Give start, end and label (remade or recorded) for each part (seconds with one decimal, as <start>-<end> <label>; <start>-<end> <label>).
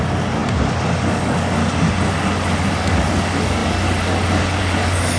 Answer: 0.0-0.4 remade; 0.4-1.1 recorded; 1.1-1.6 remade; 1.6-2.1 recorded; 2.1-5.2 remade